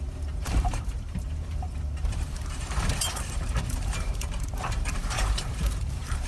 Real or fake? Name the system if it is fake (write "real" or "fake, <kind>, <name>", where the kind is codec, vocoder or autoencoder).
fake, vocoder, BigVGAN v2